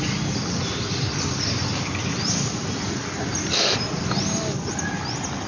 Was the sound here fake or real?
real